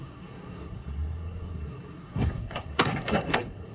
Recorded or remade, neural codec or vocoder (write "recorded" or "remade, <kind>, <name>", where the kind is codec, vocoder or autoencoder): remade, codec, SNAC